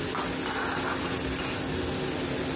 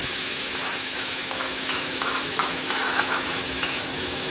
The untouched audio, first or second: first